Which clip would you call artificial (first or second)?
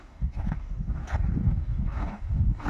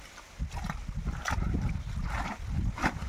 first